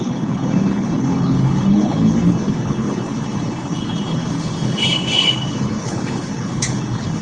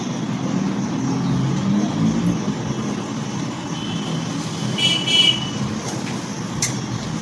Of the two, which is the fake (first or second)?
first